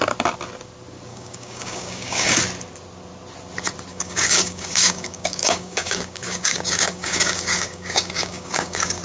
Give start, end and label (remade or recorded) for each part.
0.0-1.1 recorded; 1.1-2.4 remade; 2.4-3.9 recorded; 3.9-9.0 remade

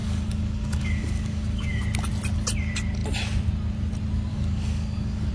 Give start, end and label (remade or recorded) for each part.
0.0-1.8 remade; 1.8-4.3 recorded; 4.3-5.3 remade